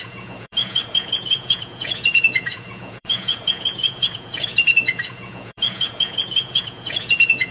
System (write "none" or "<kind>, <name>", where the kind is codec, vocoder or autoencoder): vocoder, Vocos